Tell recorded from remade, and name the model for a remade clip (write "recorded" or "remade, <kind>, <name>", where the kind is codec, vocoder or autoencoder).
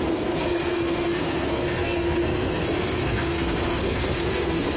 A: remade, codec, SNAC